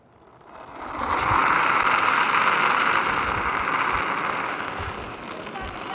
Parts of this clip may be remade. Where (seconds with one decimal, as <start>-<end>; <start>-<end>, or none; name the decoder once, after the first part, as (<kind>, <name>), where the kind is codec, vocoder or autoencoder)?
none